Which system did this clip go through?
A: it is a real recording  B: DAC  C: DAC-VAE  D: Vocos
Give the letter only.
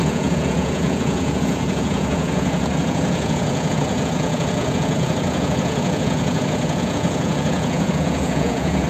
D